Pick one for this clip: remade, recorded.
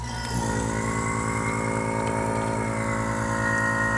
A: recorded